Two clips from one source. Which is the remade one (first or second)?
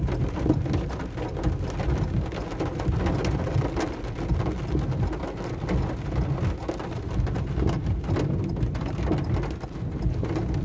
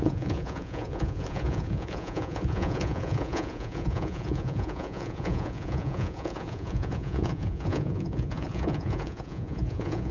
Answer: second